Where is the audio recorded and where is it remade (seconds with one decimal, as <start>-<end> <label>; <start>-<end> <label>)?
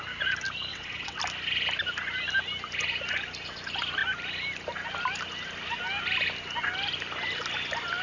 0.0-0.7 recorded; 0.7-1.2 remade; 1.2-8.0 recorded